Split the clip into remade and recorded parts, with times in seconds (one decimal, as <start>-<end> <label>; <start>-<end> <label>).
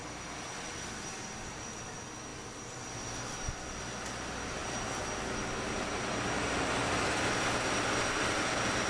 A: 0.0-8.9 recorded